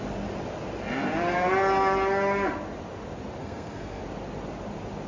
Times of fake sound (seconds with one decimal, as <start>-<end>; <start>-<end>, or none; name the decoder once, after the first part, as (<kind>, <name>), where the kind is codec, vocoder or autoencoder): 3.4-4.0 (codec, SNAC)